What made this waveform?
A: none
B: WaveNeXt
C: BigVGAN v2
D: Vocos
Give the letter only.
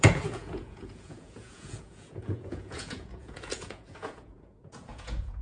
D